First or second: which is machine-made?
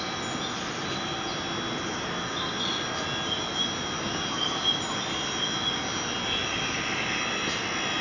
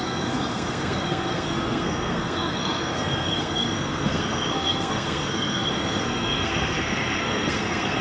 second